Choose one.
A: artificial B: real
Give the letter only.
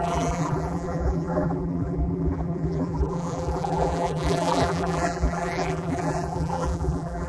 A